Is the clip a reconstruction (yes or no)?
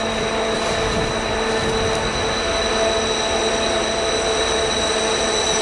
no